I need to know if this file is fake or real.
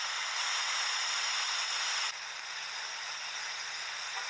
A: real